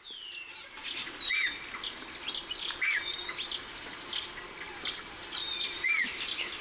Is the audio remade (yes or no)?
no